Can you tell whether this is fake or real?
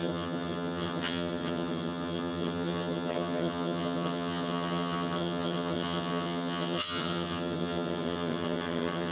fake